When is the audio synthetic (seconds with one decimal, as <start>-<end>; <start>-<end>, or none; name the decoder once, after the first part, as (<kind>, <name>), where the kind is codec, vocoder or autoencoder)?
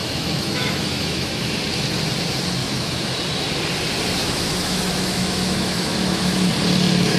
0.0-1.5 (autoencoder, DAC-VAE); 2.6-3.1; 4.2-6.5